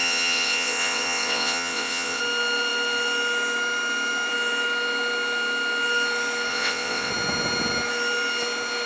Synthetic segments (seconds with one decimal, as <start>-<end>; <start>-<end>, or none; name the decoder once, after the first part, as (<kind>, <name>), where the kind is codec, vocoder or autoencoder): 0.0-2.2 (vocoder, WaveNeXt); 6.5-7.1